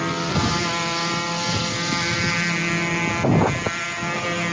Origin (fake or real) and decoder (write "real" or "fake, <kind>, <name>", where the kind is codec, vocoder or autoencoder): real